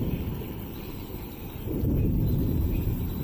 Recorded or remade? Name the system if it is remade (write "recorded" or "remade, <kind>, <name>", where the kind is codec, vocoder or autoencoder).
remade, vocoder, BigVGAN v2